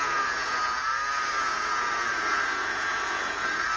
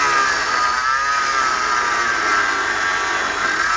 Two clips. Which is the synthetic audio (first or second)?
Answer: first